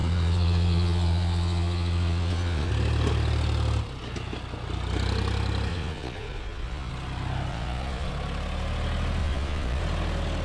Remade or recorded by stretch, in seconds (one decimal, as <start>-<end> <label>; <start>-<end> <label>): 0.0-2.7 remade; 2.7-5.7 recorded; 5.7-6.9 remade; 6.9-7.5 recorded; 7.5-8.1 remade; 8.1-9.2 recorded; 9.2-9.8 remade; 9.8-10.4 recorded

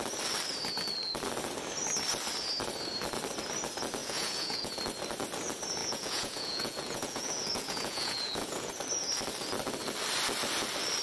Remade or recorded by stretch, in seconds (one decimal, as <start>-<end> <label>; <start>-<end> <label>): 0.0-4.0 recorded; 4.0-4.8 remade; 4.8-5.8 recorded; 5.8-8.7 remade; 8.7-11.0 recorded

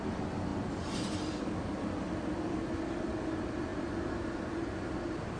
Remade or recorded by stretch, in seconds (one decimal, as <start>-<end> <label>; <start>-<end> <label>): 0.0-5.4 recorded

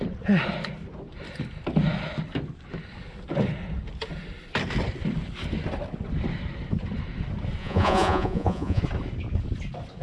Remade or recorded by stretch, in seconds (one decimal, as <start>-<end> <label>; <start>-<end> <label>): 0.0-7.6 recorded; 7.6-8.8 remade; 8.8-10.0 recorded

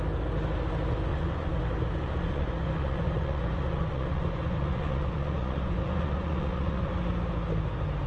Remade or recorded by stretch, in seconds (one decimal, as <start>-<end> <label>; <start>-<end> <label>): 0.0-1.1 recorded; 1.1-1.6 remade; 1.6-2.0 recorded; 2.0-6.9 remade; 6.9-8.1 recorded